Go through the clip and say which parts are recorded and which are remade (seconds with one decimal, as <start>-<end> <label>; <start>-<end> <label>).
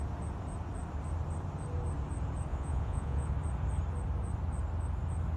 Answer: 0.0-2.5 recorded; 2.5-3.3 remade; 3.3-5.4 recorded